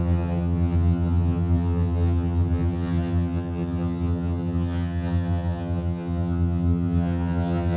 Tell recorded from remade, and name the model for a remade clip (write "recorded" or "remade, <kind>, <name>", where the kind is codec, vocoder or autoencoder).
remade, vocoder, HiFi-GAN